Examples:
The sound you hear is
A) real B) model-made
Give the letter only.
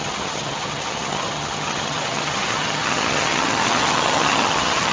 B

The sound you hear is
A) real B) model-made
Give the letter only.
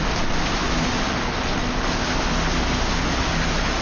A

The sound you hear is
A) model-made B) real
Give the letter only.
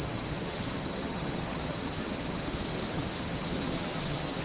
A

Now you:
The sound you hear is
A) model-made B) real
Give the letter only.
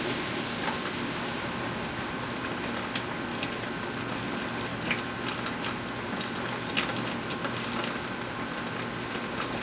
B